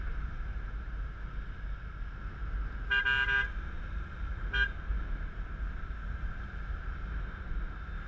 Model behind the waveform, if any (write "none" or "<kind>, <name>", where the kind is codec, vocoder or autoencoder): none